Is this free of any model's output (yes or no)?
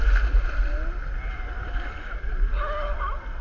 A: yes